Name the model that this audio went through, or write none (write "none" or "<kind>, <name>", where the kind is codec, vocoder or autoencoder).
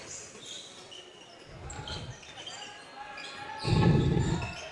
none